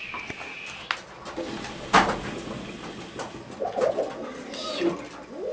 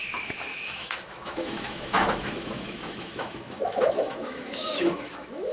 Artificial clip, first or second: second